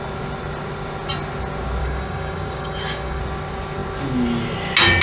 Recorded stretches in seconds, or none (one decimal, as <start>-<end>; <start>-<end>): 0.0-1.8; 3.2-5.0